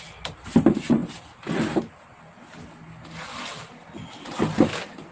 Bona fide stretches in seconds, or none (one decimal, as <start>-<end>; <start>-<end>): 0.0-5.1